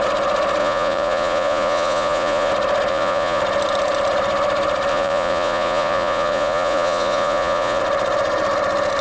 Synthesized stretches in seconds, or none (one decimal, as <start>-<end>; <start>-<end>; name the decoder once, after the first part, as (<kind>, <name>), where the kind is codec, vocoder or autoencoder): 0.6-2.5 (vocoder, Vocos); 2.9-3.4; 4.9-7.8